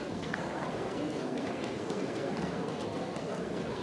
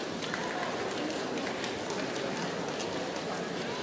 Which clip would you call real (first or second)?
second